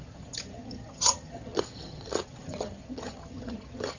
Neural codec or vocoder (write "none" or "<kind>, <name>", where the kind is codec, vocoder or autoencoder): vocoder, HiFi-GAN